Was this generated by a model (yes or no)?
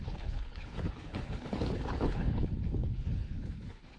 yes